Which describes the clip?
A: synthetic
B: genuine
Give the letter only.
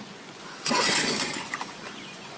A